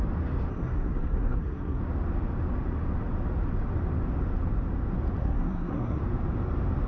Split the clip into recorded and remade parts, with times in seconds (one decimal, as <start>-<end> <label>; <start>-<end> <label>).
0.0-0.5 recorded; 0.5-1.8 remade; 1.8-5.2 recorded; 5.2-6.0 remade; 6.0-6.9 recorded